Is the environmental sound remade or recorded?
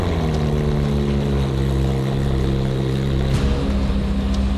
recorded